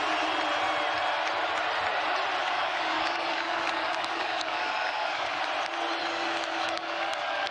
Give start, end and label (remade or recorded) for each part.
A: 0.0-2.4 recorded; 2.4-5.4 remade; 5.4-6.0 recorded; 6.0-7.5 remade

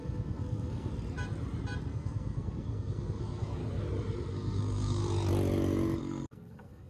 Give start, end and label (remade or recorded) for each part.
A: 0.0-0.9 remade; 0.9-1.9 recorded; 1.9-3.6 remade; 3.6-4.3 recorded; 4.3-5.0 remade; 5.0-6.0 recorded; 6.0-6.9 remade

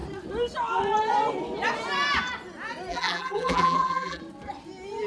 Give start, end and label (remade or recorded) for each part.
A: 0.0-2.9 recorded; 2.9-4.2 remade; 4.2-5.1 recorded

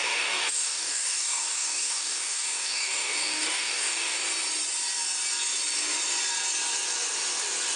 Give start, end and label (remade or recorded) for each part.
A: 0.0-4.2 remade; 4.2-7.8 recorded

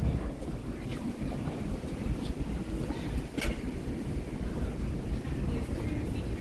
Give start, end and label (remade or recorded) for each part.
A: 0.0-6.4 recorded

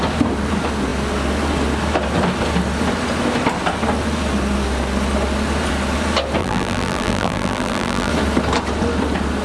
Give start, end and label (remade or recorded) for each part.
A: 0.0-6.4 recorded; 6.4-8.1 remade; 8.1-9.4 recorded

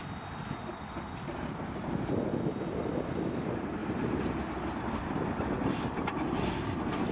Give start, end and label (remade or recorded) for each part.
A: 0.0-7.1 recorded

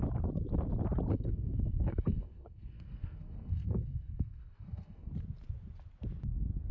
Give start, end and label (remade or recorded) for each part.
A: 0.0-1.1 recorded; 1.1-5.1 remade; 5.1-6.7 recorded